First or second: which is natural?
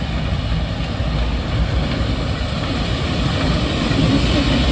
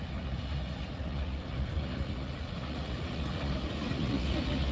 first